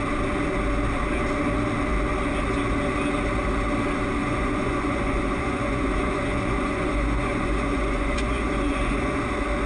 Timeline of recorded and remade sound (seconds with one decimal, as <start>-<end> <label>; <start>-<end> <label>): 0.0-4.2 recorded; 4.2-9.2 remade; 9.2-9.7 recorded